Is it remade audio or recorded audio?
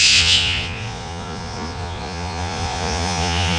remade